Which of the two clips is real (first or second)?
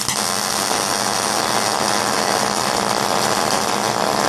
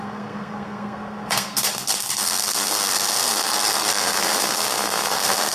first